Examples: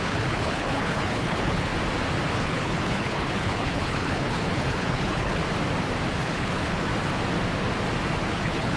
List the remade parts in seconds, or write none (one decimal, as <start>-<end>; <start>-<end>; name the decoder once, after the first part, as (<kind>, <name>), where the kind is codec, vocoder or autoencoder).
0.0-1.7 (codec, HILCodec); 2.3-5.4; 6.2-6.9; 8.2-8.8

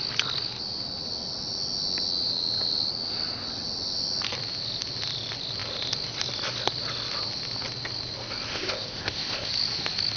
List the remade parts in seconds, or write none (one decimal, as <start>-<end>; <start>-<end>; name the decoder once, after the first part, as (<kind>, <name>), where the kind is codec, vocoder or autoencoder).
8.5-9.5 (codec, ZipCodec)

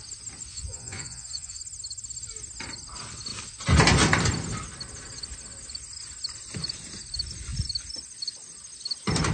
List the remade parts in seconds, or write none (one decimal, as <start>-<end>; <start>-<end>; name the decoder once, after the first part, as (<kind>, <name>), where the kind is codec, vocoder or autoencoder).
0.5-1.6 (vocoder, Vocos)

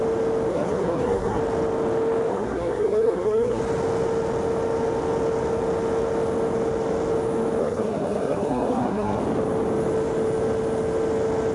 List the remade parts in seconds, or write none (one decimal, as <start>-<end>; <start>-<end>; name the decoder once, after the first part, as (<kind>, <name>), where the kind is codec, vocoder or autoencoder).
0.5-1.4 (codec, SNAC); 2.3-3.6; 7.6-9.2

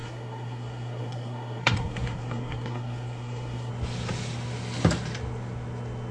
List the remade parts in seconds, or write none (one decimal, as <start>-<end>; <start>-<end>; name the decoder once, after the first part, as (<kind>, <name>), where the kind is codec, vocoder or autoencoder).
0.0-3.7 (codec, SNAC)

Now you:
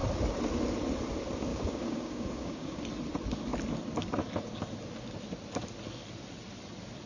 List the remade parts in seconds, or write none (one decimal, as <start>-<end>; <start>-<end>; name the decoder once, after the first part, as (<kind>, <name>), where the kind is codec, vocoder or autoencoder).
1.5-2.8 (codec, DAC)